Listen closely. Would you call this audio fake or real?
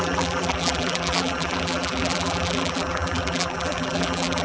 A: fake